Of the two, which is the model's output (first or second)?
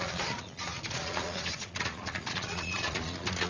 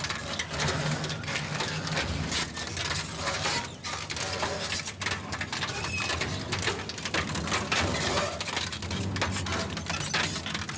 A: first